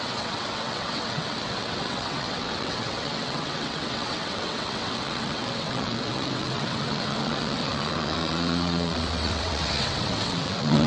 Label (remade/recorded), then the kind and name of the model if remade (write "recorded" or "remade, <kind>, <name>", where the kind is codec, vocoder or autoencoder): remade, vocoder, WaveNeXt